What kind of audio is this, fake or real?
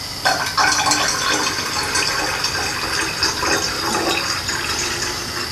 real